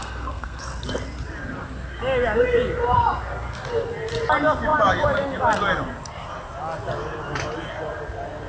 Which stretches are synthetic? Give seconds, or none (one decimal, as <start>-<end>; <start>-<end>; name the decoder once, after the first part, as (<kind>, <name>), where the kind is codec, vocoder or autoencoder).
0.0-0.6 (codec, SNAC)